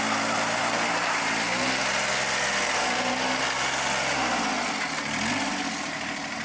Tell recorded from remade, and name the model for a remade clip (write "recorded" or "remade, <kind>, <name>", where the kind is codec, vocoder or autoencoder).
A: recorded